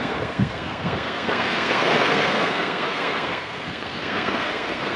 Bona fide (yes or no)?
no